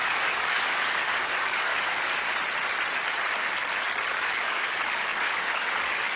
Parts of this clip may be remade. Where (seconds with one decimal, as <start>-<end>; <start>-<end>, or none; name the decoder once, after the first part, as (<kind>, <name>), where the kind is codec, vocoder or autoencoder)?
0.0-1.7 (codec, DAC); 4.1-6.2